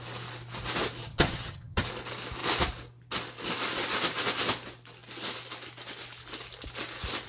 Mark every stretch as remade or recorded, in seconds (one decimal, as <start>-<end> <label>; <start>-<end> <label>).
0.0-1.0 recorded; 1.0-1.9 remade; 1.9-7.3 recorded